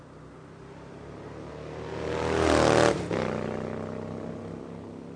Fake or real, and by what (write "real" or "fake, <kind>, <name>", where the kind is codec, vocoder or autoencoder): real